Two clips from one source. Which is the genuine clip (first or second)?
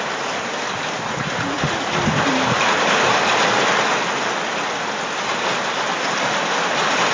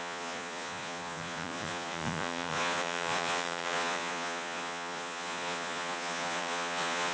first